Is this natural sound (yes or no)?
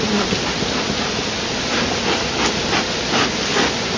yes